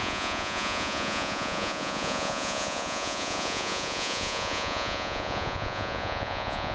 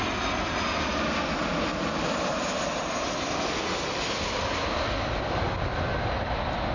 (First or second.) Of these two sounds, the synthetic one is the first